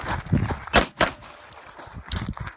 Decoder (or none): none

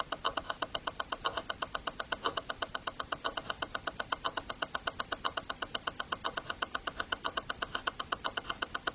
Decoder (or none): none